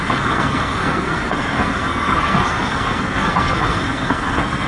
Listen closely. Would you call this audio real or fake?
fake